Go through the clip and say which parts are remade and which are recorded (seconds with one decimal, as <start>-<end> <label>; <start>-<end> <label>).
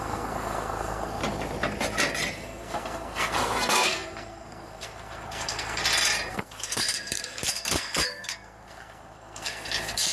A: 0.0-1.2 remade; 1.2-2.3 recorded; 2.3-5.8 remade; 5.8-6.3 recorded; 6.3-10.1 remade